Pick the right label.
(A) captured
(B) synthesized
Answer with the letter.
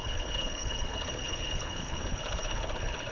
B